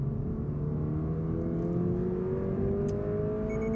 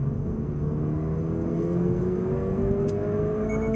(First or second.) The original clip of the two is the first